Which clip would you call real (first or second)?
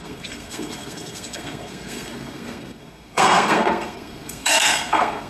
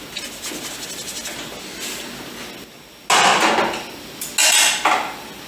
second